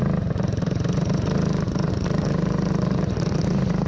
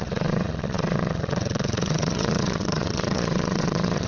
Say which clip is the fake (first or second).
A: second